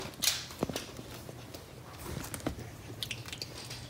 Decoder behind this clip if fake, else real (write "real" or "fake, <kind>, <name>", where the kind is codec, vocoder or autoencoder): real